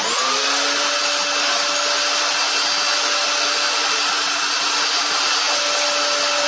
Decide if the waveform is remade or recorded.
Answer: recorded